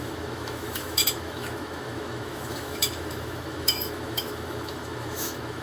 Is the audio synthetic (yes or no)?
yes